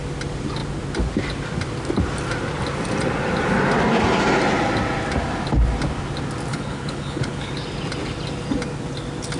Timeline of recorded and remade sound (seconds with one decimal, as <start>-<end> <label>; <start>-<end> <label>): 0.0-6.5 recorded; 6.5-7.5 remade; 7.5-9.4 recorded